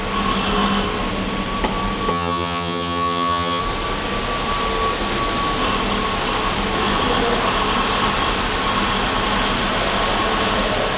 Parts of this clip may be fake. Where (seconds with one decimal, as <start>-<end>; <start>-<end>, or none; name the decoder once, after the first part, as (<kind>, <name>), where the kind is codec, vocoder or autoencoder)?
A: 2.1-3.6 (vocoder, HiFi-GAN)